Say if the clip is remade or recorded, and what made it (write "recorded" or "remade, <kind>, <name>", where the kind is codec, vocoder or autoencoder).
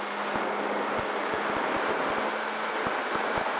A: recorded